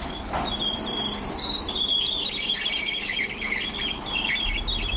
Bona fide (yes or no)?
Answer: yes